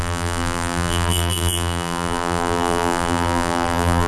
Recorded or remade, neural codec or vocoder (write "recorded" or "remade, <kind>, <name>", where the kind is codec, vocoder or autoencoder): remade, vocoder, BigVGAN v2